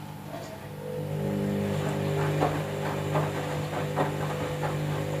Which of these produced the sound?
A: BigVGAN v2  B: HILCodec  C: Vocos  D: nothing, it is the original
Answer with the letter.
D